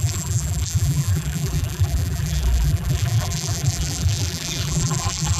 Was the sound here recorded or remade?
remade